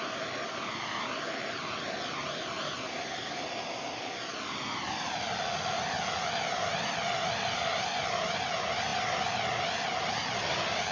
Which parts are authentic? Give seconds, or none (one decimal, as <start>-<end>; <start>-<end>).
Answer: 0.0-10.9